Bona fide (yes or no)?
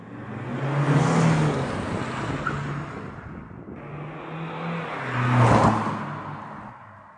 yes